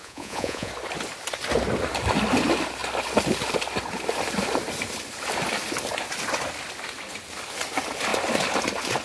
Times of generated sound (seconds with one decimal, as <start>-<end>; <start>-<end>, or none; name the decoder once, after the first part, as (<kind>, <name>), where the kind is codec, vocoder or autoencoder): 0.0-0.7 (vocoder, Vocos)